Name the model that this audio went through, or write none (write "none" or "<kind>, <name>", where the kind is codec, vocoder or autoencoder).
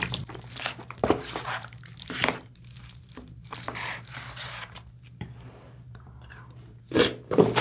vocoder, BigVGAN v2